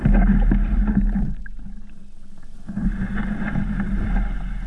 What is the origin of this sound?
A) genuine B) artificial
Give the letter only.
A